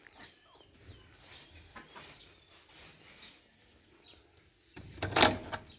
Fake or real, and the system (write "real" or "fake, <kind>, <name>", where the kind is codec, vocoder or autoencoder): real